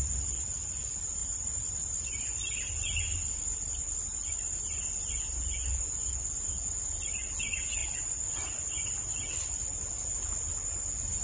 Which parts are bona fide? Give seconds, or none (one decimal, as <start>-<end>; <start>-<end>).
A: 0.0-1.2; 5.2-11.2